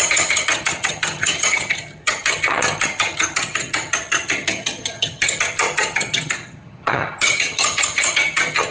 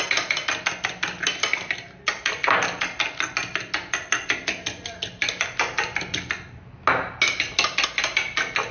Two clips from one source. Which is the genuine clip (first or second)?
second